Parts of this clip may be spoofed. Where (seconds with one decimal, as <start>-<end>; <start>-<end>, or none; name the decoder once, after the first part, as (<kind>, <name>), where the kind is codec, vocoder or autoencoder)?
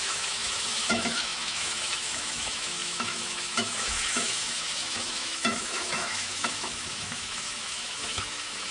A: 0.0-8.7 (autoencoder, DAC-VAE)